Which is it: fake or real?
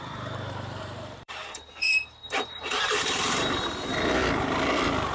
fake